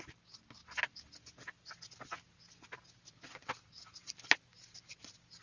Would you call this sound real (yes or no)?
yes